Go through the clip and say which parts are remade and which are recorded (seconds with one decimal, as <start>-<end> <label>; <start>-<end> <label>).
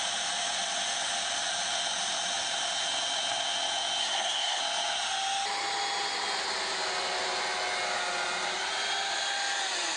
0.0-4.0 recorded; 4.0-4.6 remade; 4.6-10.0 recorded